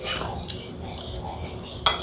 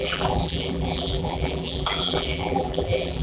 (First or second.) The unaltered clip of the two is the first